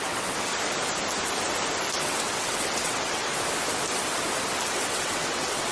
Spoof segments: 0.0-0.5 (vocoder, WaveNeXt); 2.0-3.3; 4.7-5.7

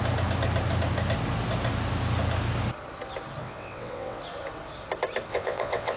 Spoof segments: 3.4-4.2 (vocoder, WaveNeXt); 5.3-6.0

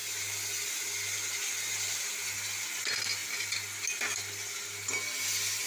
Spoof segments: none

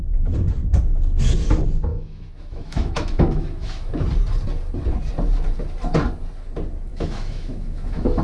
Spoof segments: 1.9-3.9 (autoencoder, DAC-VAE); 6.9-8.2

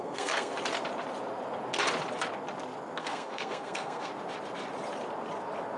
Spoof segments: 0.0-0.5 (codec, SNAC); 3.0-4.1

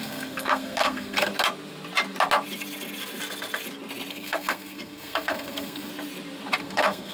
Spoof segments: 0.0-1.3 (codec, SNAC); 4.1-5.9; 6.6-7.1

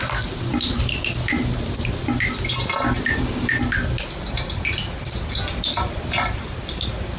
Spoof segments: 5.5-7.2 (vocoder, BigVGAN v2)